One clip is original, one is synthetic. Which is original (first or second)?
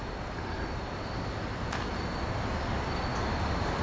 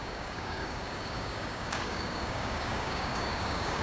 first